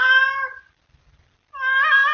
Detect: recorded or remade recorded